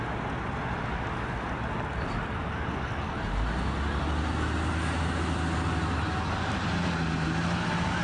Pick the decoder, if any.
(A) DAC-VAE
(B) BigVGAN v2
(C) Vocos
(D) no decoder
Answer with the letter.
D